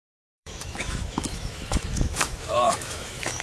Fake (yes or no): yes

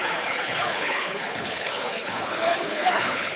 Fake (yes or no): yes